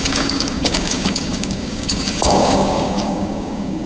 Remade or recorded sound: remade